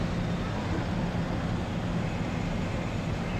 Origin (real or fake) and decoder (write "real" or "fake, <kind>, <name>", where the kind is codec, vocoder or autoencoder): real